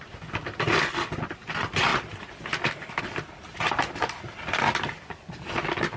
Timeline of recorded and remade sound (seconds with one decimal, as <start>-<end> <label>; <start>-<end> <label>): 0.0-6.0 recorded